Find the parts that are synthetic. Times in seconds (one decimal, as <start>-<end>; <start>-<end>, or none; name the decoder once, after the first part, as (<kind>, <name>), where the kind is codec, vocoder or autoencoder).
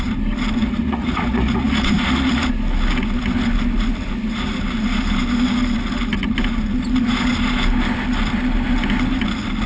0.6-2.5 (vocoder, Vocos)